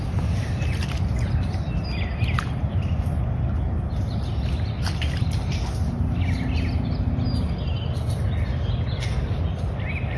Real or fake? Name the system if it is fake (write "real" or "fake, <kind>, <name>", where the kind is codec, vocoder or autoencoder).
real